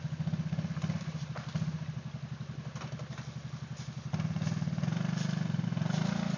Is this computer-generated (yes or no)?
no